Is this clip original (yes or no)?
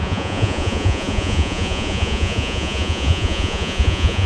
no